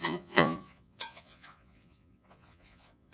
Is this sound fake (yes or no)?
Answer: yes